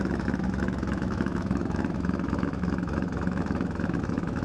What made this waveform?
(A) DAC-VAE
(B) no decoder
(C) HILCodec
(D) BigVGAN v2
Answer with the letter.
A